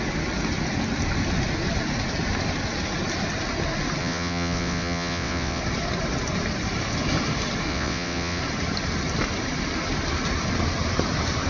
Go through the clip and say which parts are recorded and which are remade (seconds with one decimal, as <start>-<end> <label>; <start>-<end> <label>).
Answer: 0.0-4.0 recorded; 4.0-5.6 remade; 5.6-7.7 recorded; 7.7-8.4 remade; 8.4-11.5 recorded

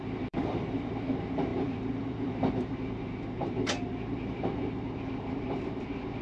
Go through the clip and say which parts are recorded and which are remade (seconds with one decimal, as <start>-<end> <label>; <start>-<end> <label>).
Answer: 0.0-6.2 remade

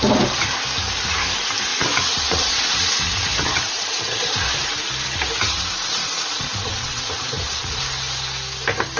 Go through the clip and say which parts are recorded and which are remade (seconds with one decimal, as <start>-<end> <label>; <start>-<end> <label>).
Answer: 0.0-1.7 recorded; 1.7-4.6 remade; 4.6-6.0 recorded; 6.0-7.8 remade; 7.8-9.0 recorded

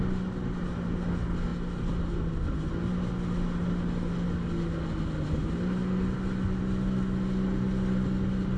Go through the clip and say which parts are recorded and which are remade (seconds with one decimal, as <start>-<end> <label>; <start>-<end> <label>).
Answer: 0.0-8.6 recorded

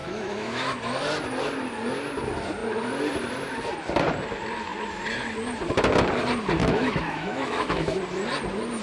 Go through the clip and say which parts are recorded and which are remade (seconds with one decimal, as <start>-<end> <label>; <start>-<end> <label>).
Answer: 0.0-0.8 remade; 0.8-6.6 recorded; 6.6-8.0 remade; 8.0-8.8 recorded

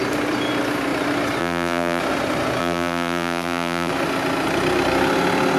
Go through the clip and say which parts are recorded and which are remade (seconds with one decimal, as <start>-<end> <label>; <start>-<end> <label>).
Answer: 0.0-1.4 recorded; 1.4-2.0 remade; 2.0-2.6 recorded; 2.6-3.9 remade; 3.9-5.6 recorded

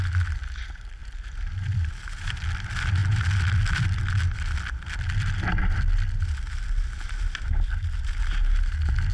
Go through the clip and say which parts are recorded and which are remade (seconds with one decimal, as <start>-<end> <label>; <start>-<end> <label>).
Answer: 0.0-9.1 recorded

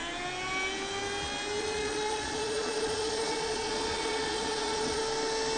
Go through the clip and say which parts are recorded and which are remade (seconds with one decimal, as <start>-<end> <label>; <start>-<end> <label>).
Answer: 0.0-1.6 recorded; 1.6-5.0 remade; 5.0-5.6 recorded